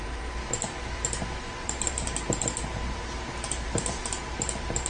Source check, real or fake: fake